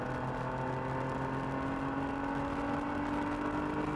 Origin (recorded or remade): recorded